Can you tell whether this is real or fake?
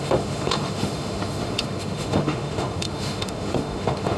fake